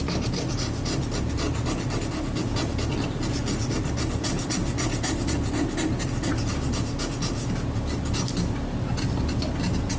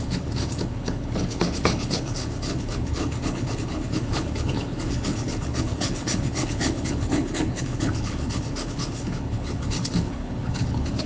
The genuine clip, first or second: first